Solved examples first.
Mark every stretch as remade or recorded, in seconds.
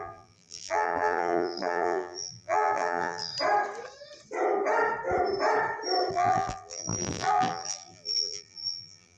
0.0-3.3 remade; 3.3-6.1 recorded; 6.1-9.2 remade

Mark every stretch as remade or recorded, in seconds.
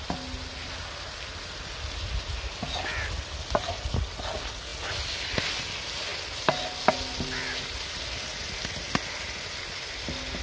0.0-10.4 recorded